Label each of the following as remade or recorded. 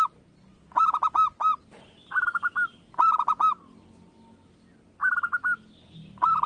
recorded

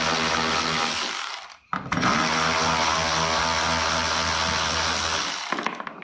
recorded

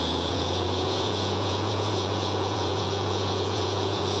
remade